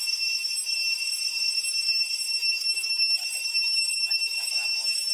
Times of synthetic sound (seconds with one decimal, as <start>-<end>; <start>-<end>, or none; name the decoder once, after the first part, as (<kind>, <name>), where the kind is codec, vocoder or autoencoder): 2.3-4.5 (autoencoder, DAC-VAE)